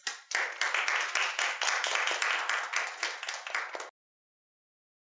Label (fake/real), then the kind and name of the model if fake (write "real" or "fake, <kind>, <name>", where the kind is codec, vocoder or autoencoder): real